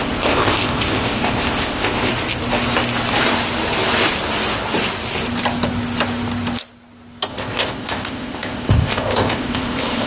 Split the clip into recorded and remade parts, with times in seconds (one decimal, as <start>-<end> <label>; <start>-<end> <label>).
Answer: 0.0-2.1 remade; 2.1-7.3 recorded; 7.3-10.1 remade